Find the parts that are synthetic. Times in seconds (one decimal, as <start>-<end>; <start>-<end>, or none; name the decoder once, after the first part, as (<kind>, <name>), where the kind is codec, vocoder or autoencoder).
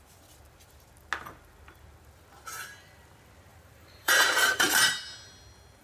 3.5-4.9 (vocoder, BigVGAN v2)